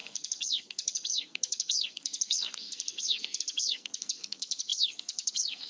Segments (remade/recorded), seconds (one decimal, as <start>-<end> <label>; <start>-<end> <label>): 0.0-5.7 remade